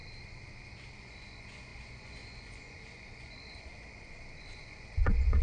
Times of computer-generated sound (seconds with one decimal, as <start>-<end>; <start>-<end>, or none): 1.0-3.7; 4.4-5.4

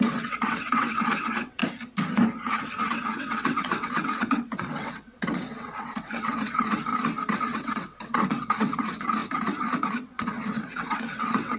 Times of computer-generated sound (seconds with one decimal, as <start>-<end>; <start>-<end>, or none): 0.0-1.6; 2.8-6.9; 7.4-9.2; 9.9-11.6

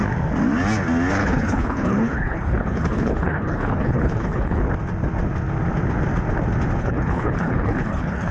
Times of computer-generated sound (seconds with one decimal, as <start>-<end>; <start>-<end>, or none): 1.1-4.6; 6.8-8.3

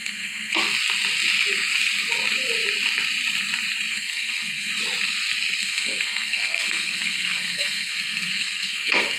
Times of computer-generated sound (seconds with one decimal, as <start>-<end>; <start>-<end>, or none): 0.0-0.6; 3.9-4.7; 5.6-9.2

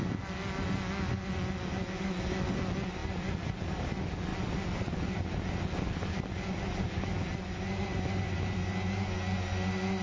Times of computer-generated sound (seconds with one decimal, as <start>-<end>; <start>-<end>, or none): none

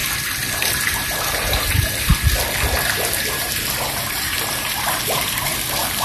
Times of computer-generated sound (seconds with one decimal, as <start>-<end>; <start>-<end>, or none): 0.5-2.1; 3.2-6.0

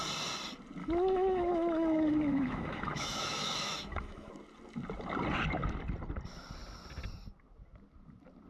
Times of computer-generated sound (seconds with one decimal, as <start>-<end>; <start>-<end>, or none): 0.8-4.3

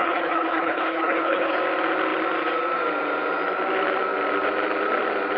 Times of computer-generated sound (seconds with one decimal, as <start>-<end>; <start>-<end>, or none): 0.0-1.6